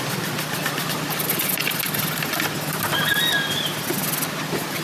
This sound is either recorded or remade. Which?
recorded